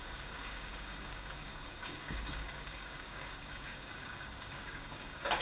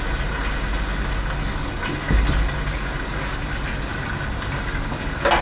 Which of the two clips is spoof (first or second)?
first